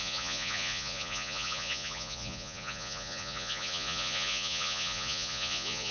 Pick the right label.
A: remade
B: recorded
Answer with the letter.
A